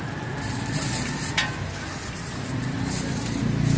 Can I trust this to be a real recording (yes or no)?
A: yes